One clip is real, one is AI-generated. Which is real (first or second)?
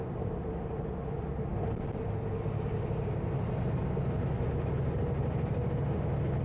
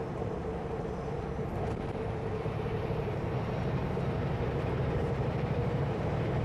first